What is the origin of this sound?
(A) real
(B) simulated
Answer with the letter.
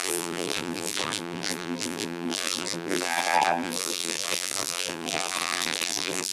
B